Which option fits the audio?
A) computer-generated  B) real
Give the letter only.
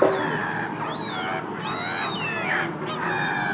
B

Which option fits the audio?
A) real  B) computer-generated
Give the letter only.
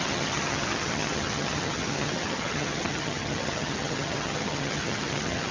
B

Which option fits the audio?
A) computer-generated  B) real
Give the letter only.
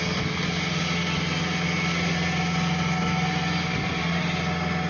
B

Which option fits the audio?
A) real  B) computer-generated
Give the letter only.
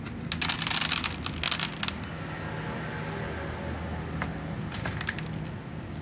A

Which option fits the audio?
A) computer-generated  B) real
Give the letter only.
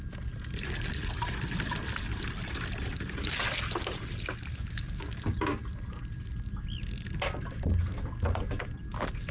B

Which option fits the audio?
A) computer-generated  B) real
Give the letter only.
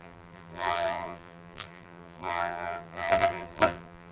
A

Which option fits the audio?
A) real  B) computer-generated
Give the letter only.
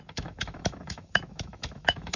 B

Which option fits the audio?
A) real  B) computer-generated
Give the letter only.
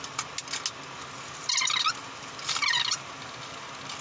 A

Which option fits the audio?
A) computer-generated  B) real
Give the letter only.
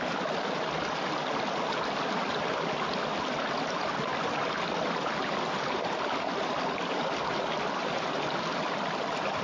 B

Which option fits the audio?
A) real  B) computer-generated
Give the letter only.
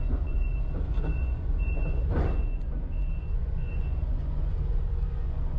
B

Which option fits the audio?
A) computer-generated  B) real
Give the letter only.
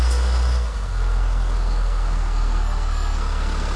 A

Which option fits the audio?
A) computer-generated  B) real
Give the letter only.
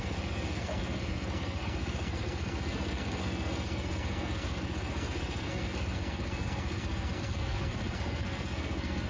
A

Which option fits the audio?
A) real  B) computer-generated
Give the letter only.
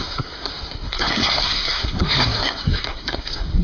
B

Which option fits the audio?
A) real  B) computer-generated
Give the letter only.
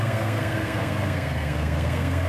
B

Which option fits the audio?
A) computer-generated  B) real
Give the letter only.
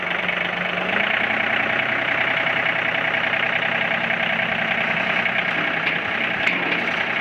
B